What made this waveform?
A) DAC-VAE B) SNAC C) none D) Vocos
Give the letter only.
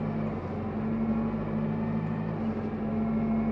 C